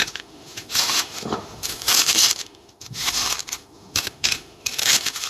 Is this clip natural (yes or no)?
no